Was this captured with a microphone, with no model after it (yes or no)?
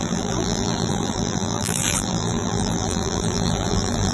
no